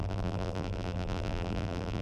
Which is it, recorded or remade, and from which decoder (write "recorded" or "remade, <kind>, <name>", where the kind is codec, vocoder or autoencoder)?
remade, vocoder, BigVGAN v2